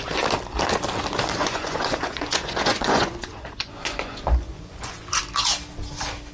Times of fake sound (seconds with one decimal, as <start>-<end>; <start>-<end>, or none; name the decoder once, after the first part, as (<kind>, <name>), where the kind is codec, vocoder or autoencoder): 1.4-5.2 (vocoder, Vocos)